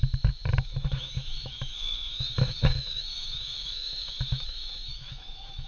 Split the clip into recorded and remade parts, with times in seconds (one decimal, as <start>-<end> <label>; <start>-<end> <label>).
0.0-5.7 remade